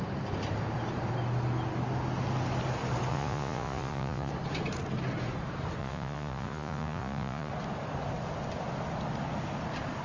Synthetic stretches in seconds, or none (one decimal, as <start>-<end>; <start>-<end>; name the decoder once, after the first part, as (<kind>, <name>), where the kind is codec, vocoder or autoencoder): 3.1-4.3 (vocoder, Vocos); 5.8-7.5